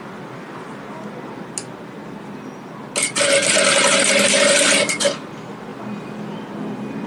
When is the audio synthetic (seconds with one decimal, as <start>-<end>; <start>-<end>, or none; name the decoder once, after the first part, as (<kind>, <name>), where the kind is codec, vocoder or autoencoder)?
none